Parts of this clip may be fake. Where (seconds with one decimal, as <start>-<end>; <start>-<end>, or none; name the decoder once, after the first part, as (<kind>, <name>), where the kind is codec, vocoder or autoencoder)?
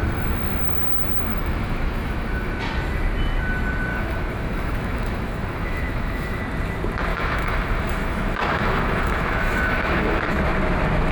1.3-2.5 (autoencoder, DAC-VAE); 3.9-6.4; 7.1-10.3